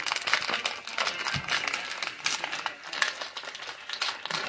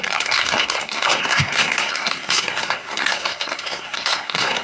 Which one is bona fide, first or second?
first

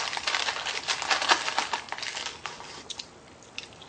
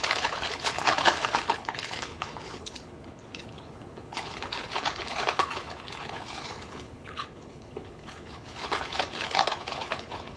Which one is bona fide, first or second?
first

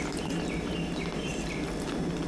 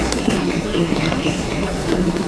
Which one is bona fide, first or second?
first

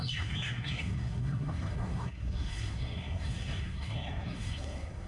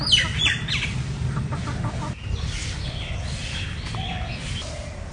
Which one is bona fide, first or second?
second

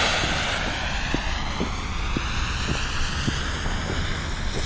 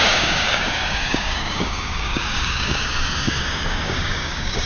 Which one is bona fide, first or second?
first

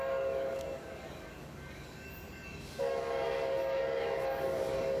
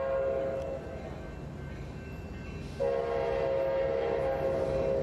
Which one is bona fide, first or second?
second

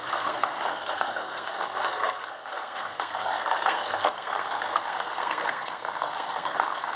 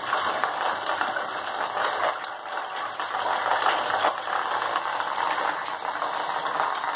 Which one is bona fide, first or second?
second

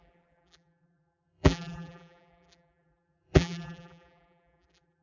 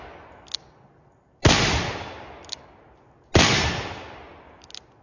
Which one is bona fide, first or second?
second